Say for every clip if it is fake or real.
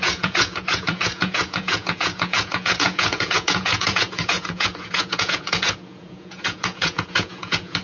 fake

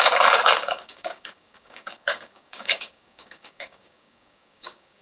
fake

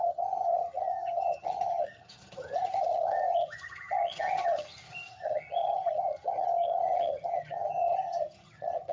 fake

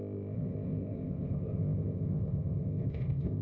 fake